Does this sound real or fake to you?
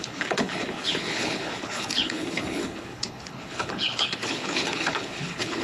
fake